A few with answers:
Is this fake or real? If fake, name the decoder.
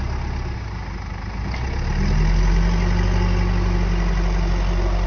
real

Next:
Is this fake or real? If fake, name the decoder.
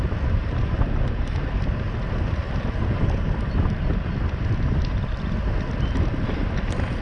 real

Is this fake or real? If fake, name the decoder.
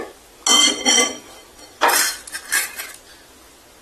real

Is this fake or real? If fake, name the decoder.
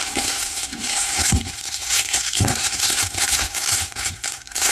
fake, codec, SNAC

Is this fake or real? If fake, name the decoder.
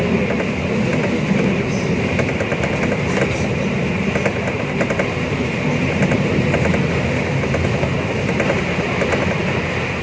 real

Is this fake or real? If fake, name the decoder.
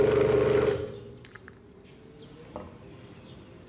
real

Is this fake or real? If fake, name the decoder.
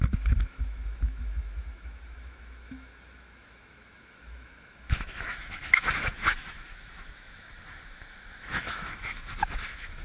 fake, autoencoder, DAC-VAE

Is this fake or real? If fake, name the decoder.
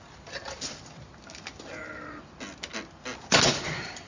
real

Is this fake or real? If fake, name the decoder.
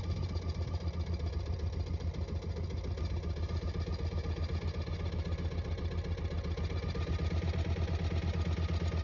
real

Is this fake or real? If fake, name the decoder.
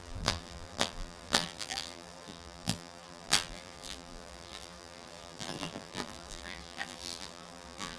fake, vocoder, BigVGAN v2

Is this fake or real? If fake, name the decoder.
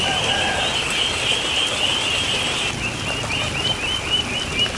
real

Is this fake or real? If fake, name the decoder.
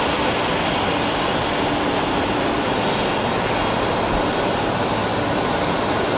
real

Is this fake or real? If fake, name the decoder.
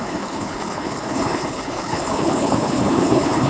fake, codec, HILCodec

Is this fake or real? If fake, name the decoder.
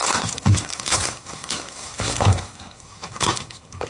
fake, codec, SNAC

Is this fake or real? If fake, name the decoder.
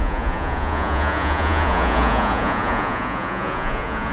fake, vocoder, Vocos